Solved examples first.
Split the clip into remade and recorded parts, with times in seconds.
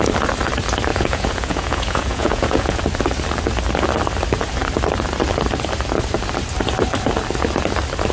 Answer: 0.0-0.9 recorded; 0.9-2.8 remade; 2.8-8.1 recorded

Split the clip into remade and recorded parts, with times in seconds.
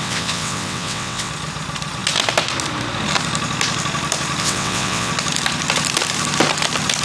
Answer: 0.0-1.3 remade; 1.3-4.4 recorded; 4.4-5.1 remade; 5.1-7.0 recorded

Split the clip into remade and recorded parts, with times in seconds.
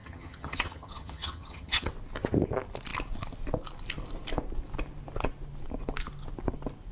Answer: 0.0-1.9 remade; 1.9-6.9 recorded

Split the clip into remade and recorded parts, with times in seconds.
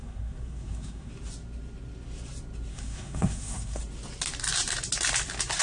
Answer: 0.0-1.1 remade; 1.1-2.7 recorded; 2.7-3.8 remade; 3.8-5.6 recorded